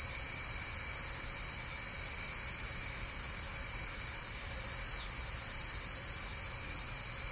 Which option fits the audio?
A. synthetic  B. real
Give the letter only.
B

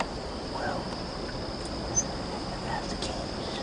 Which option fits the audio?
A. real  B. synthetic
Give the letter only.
A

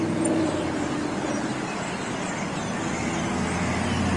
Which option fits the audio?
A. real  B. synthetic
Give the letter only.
A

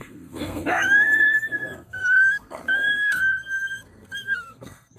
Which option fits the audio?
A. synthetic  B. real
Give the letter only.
A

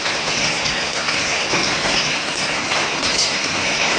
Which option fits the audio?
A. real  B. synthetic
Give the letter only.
B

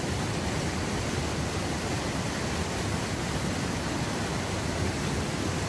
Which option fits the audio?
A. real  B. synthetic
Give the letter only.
A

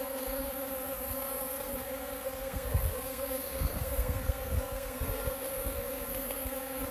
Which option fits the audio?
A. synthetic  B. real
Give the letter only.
A